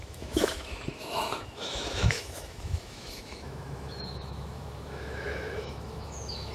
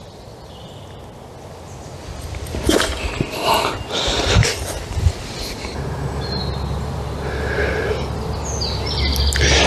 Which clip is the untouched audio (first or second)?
second